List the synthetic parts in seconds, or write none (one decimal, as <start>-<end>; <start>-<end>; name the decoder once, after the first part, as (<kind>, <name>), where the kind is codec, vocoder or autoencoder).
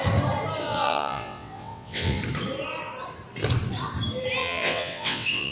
0.6-2.2 (vocoder, WaveNeXt); 4.4-5.5